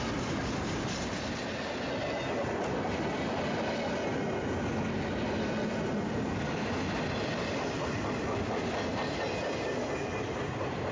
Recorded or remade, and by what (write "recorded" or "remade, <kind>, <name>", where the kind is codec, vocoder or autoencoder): recorded